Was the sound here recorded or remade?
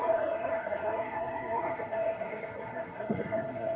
remade